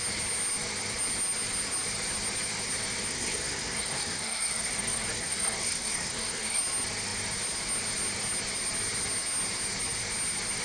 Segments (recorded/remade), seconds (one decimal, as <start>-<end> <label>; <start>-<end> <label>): 0.0-3.1 recorded; 3.1-6.6 remade; 6.6-10.6 recorded